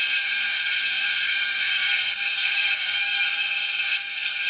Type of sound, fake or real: fake